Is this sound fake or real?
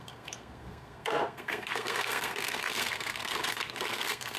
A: fake